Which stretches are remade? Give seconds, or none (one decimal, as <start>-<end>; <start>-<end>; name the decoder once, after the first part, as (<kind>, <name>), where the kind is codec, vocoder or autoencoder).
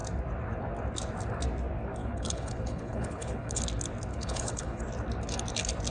2.0-3.6 (codec, HILCodec); 4.1-4.8